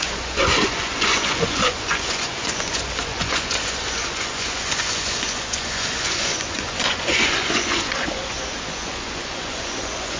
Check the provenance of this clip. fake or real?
fake